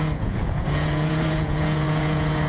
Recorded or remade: remade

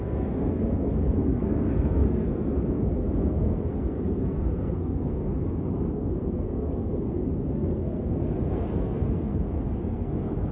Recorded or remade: remade